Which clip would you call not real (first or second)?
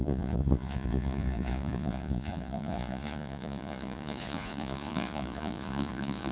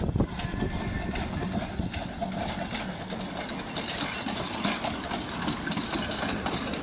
first